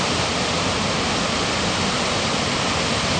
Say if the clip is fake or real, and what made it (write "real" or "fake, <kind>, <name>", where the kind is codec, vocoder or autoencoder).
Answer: real